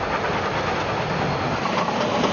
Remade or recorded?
recorded